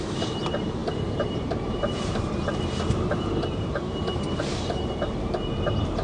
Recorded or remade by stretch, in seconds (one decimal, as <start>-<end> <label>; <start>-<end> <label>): 0.0-6.0 remade